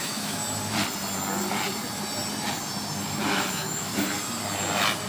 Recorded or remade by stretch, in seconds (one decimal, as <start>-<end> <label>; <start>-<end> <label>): 0.0-0.4 remade; 0.4-3.5 recorded; 3.5-3.9 remade; 3.9-5.1 recorded